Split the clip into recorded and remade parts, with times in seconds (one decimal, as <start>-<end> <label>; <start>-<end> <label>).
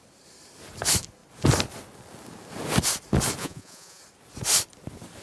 0.0-3.4 recorded; 3.4-4.0 remade; 4.0-5.2 recorded